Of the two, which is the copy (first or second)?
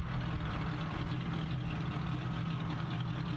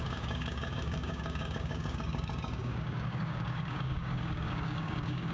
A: second